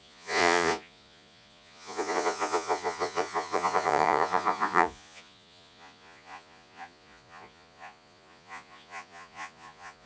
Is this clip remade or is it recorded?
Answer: remade